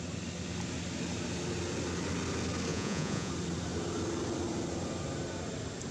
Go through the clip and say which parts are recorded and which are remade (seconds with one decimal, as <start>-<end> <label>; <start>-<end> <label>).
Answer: 0.0-2.7 recorded; 2.7-3.3 remade; 3.3-5.9 recorded